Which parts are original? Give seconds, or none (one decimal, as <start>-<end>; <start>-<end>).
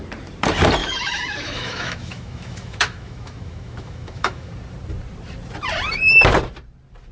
0.0-0.8; 4.5-7.1